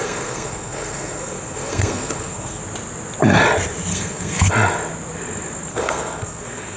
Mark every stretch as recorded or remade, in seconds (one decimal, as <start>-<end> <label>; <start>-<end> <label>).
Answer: 0.0-2.6 remade; 2.6-3.9 recorded; 3.9-4.5 remade; 4.5-5.7 recorded; 5.7-6.8 remade